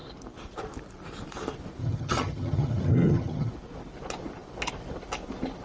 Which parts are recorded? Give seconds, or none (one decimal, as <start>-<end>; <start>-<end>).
0.0-1.8; 3.5-5.6